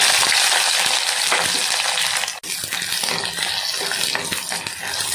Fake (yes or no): no